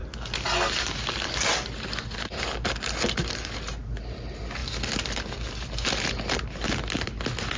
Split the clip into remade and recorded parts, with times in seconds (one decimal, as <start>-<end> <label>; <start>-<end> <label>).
0.0-7.6 recorded